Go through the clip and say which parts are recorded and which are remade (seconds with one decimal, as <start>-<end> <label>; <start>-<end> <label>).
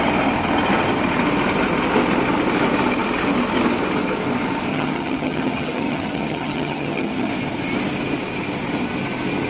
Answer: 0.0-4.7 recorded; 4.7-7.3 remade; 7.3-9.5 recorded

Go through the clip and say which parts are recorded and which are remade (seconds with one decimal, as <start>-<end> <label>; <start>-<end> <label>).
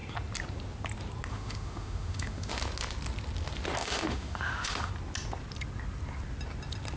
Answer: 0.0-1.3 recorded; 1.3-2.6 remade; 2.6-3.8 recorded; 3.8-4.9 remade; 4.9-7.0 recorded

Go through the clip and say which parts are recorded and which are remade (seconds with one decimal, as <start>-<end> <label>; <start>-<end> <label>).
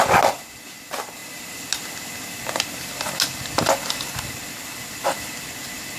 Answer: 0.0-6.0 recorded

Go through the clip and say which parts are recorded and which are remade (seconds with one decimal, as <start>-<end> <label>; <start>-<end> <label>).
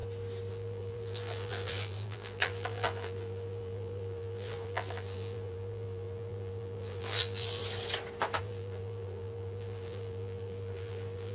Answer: 0.0-0.5 recorded; 0.5-7.6 remade; 7.6-8.4 recorded; 8.4-11.3 remade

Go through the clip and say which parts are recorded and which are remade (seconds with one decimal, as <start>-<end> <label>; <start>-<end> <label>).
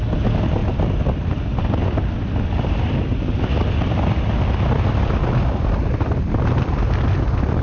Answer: 0.0-7.6 recorded